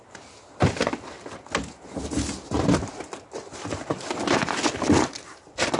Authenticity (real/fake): real